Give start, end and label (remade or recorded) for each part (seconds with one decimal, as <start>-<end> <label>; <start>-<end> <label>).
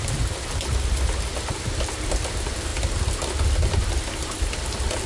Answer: 0.0-5.1 recorded